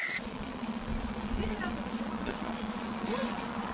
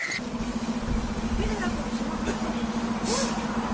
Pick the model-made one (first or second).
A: first